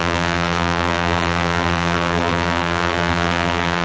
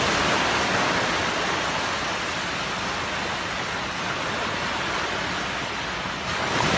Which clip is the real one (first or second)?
second